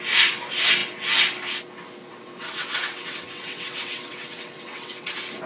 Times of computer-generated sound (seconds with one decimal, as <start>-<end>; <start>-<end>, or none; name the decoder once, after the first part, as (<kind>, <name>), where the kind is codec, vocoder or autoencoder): 2.1-5.1 (vocoder, WaveNeXt)